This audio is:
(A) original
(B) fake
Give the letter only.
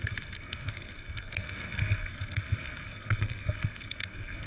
B